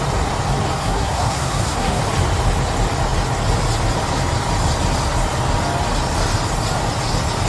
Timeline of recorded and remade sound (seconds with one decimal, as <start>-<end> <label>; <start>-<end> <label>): 0.0-0.8 recorded; 0.8-2.0 remade; 2.0-7.5 recorded